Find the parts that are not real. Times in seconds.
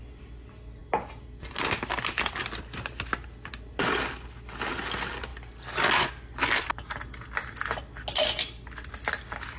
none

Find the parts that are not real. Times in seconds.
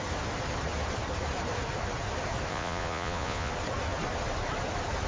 2.5-3.5 (vocoder, Vocos)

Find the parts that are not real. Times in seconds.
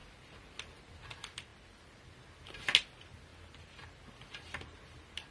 3.3-5.3 (vocoder, BigVGAN v2)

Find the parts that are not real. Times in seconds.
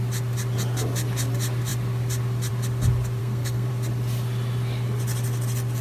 3.2-3.7 (codec, SNAC)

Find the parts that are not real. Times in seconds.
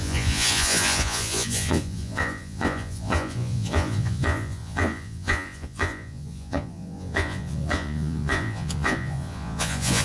0.0-10.0 (vocoder, Vocos)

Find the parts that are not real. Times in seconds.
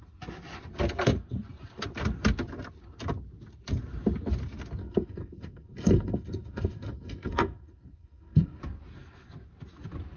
4.8-8.6 (codec, SNAC)